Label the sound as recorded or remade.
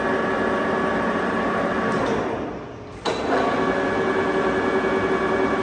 recorded